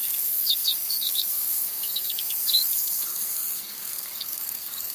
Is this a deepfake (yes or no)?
yes